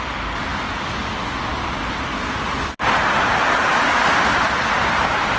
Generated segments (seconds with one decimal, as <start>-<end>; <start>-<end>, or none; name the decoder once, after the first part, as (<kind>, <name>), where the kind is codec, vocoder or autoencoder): none